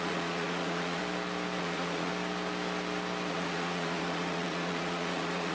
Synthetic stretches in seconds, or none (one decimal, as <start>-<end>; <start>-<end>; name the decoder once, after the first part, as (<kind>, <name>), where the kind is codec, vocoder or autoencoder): 0.0-1.0 (vocoder, Vocos); 1.6-2.1; 3.3-5.5